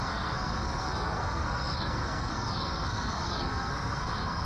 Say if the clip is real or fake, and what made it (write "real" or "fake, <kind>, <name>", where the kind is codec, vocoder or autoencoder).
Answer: fake, codec, SNAC